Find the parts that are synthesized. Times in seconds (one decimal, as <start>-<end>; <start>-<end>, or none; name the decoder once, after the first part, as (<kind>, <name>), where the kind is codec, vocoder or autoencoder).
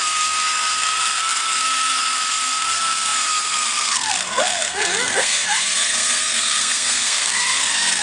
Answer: 0.0-8.0 (codec, SNAC)